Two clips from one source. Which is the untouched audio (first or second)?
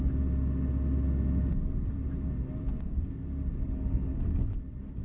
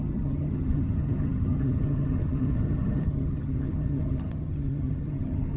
first